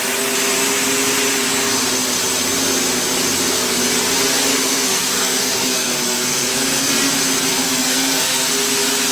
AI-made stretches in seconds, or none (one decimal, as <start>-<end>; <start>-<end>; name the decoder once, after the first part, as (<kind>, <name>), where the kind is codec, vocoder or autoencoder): 4.5-6.9 (codec, SNAC); 7.5-8.5